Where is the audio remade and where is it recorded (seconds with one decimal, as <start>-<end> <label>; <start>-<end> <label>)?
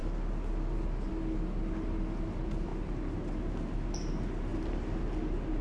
0.0-5.6 recorded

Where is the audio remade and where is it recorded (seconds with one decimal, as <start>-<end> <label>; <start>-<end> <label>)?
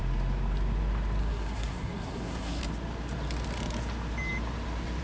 0.0-1.2 recorded; 1.2-2.6 remade; 2.6-5.0 recorded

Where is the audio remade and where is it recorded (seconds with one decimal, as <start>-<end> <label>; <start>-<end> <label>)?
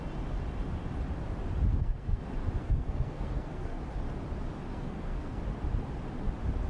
0.0-1.7 recorded; 1.7-2.2 remade; 2.2-2.6 recorded; 2.6-3.8 remade; 3.8-4.7 recorded; 4.7-5.4 remade; 5.4-6.7 recorded